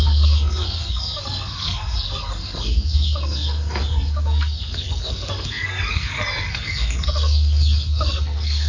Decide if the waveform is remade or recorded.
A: remade